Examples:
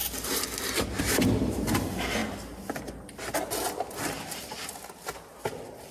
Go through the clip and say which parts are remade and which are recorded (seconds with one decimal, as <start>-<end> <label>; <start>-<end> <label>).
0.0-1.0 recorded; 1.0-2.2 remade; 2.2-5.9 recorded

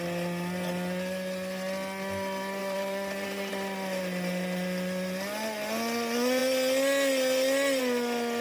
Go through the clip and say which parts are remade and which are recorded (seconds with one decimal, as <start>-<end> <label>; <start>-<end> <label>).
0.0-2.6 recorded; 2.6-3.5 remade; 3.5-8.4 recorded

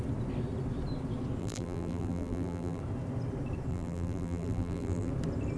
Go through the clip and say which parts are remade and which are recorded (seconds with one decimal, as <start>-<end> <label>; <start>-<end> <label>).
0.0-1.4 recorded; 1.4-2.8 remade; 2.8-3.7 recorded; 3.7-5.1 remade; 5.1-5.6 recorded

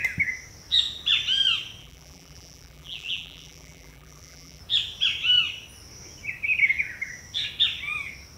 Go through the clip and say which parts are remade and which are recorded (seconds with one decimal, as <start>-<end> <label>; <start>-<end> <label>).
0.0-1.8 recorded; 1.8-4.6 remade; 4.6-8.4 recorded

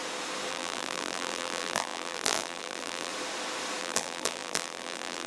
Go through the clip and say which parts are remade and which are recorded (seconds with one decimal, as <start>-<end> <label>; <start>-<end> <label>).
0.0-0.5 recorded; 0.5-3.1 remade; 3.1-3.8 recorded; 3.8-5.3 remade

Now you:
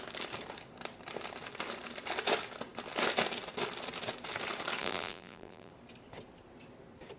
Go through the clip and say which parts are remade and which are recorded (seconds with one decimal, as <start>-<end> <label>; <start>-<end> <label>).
0.0-4.8 recorded; 4.8-5.7 remade; 5.7-7.2 recorded